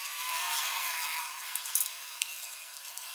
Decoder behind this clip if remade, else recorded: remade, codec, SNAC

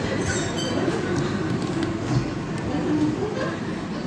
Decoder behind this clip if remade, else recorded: recorded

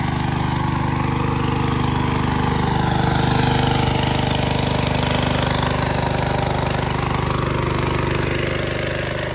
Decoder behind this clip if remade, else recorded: recorded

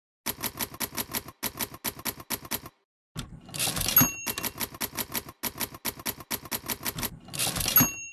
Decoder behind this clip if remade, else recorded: recorded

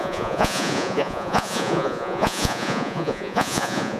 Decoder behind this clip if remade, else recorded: remade, vocoder, Vocos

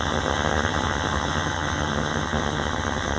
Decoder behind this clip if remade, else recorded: remade, vocoder, HiFi-GAN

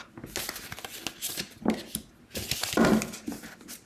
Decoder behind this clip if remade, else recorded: recorded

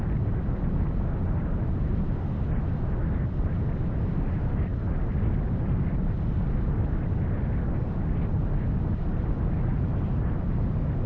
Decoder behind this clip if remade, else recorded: recorded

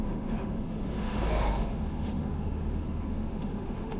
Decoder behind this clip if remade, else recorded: remade, autoencoder, DAC-VAE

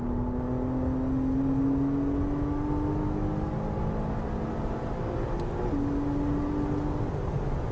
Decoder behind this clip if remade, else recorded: recorded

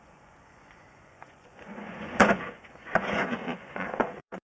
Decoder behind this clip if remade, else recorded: remade, vocoder, Vocos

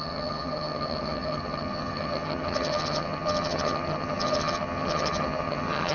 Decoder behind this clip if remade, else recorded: remade, vocoder, HiFi-GAN